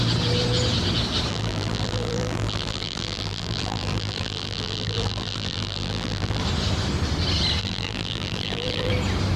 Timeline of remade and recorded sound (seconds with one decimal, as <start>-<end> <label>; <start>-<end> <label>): 0.0-1.3 recorded; 1.3-6.4 remade; 6.4-7.6 recorded; 7.6-8.9 remade; 8.9-9.4 recorded